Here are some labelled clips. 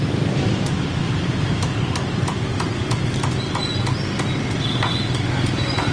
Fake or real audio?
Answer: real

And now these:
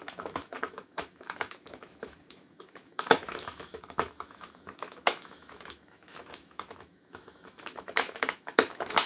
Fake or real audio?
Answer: fake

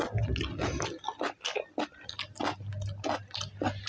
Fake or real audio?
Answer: real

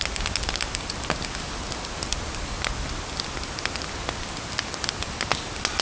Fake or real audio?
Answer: real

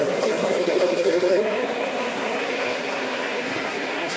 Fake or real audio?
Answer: fake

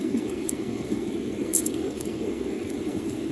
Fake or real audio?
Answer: fake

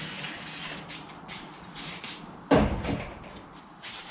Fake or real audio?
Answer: real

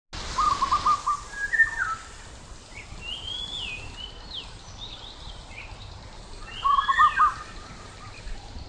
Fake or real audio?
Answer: real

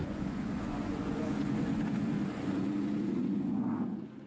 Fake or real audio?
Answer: fake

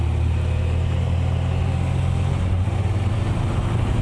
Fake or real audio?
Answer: real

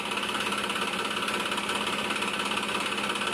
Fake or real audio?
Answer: real